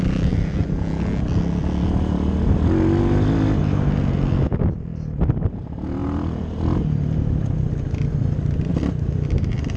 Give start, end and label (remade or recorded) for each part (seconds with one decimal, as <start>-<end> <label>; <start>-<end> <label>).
0.0-9.8 recorded